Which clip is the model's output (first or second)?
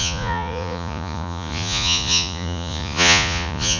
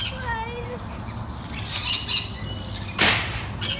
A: first